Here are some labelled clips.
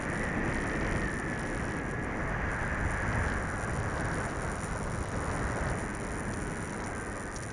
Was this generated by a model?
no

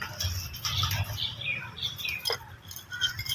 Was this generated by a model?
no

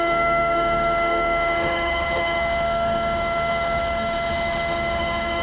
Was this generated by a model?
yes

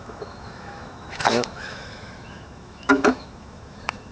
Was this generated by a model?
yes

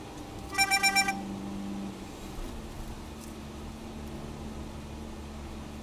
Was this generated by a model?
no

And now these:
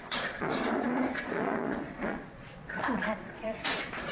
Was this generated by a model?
yes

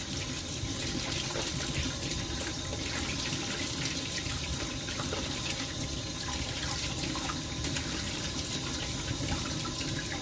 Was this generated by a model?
yes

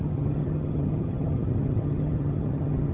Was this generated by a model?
yes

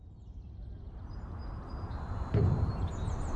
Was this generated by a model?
yes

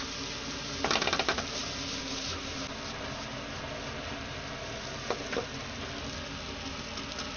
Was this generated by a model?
no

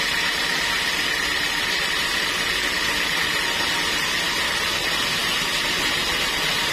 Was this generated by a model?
no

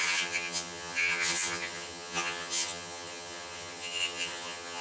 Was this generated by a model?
yes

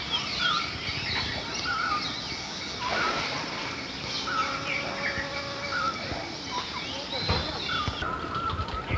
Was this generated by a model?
no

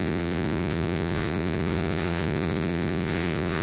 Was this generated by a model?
yes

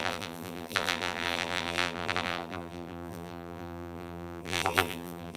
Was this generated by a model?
yes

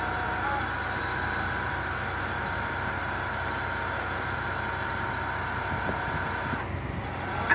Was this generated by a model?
no